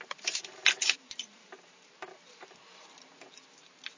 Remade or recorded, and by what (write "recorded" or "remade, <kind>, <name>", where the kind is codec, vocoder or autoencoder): remade, vocoder, BigVGAN v2